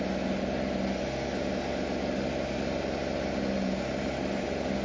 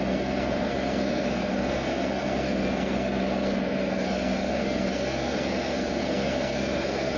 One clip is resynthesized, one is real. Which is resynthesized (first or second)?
second